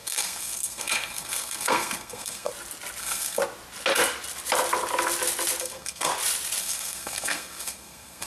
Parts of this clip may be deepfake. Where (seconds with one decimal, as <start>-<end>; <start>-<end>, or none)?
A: 0.0-2.5; 3.0-3.4; 5.6-6.1; 6.6-8.3